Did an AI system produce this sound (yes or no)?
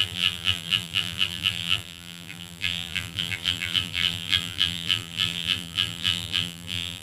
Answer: yes